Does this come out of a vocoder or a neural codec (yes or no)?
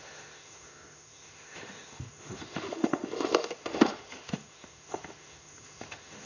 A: yes